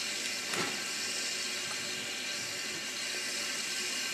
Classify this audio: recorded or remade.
recorded